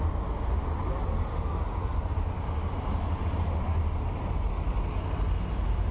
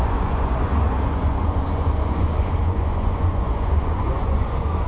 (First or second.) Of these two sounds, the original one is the first